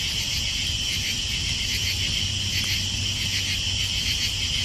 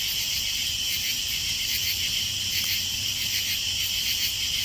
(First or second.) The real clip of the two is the first